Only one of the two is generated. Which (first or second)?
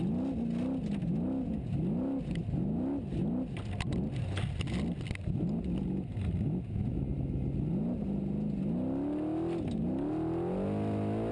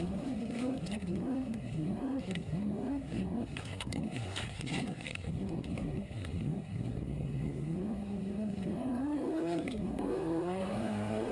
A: second